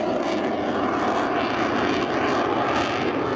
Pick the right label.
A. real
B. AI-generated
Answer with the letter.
A